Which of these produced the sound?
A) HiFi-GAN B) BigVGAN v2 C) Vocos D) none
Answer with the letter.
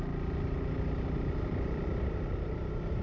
D